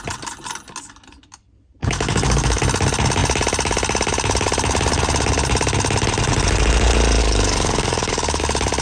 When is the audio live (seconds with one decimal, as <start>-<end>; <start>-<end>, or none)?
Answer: 0.0-1.8; 2.6-7.2; 8.4-8.8